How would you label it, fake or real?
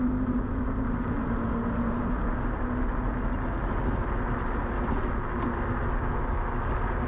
real